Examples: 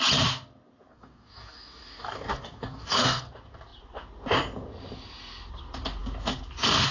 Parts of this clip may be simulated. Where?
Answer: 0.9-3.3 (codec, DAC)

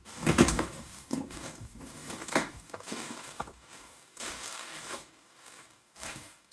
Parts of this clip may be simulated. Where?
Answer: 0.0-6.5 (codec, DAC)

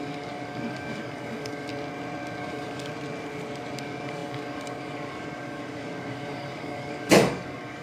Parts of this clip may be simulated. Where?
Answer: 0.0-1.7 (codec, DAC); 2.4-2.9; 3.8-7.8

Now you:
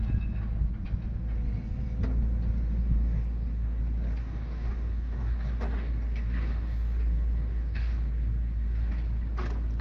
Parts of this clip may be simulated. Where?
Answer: 2.8-3.8 (codec, DAC); 4.2-8.9